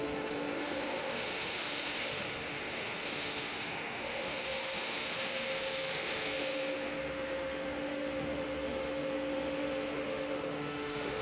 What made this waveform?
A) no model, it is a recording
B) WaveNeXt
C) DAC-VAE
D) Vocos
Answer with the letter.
C